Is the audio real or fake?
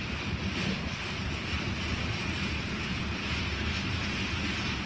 real